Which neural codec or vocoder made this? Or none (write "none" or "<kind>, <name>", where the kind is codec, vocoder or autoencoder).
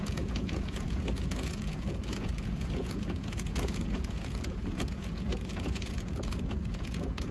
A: vocoder, Vocos